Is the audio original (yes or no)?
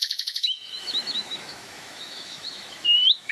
no